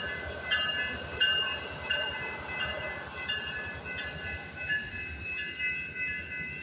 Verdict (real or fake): real